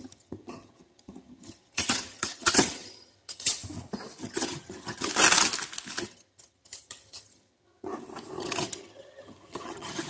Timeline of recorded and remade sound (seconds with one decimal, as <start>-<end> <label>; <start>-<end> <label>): 0.0-3.6 remade; 3.6-4.2 recorded; 4.2-5.1 remade; 5.1-6.0 recorded; 6.0-7.9 remade; 7.9-8.4 recorded; 8.4-10.1 remade